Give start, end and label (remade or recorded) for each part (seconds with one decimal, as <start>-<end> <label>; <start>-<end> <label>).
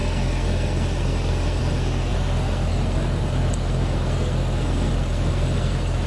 0.0-6.1 remade